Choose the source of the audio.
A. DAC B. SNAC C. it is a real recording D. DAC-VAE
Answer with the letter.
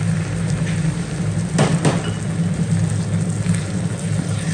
C